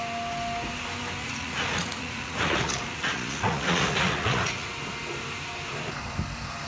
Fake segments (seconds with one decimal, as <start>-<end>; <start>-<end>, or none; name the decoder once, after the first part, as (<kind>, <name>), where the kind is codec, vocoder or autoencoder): 1.2-4.7 (vocoder, Vocos)